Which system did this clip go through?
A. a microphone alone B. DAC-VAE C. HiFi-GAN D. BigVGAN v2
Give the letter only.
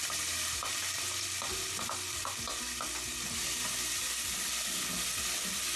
A